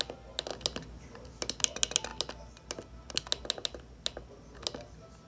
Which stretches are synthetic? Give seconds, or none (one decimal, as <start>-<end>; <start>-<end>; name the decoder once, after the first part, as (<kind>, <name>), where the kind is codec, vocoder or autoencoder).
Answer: none